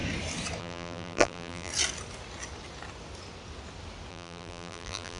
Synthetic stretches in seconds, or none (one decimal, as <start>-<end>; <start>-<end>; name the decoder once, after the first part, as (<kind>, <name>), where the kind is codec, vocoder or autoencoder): 0.6-1.7 (vocoder, BigVGAN v2); 4.1-5.2